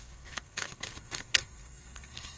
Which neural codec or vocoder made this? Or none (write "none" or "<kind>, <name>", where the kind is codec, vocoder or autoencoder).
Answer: codec, SNAC